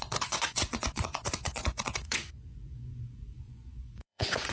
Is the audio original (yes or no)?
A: no